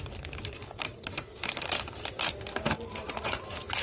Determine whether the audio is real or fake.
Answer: fake